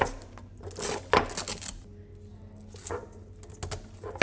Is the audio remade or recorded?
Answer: recorded